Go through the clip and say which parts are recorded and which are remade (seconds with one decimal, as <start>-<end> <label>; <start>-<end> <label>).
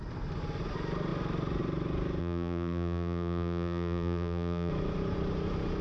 0.0-2.2 recorded; 2.2-4.7 remade; 4.7-5.8 recorded